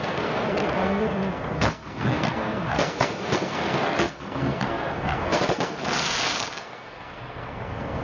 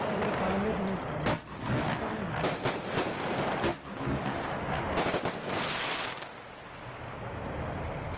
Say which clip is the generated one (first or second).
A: first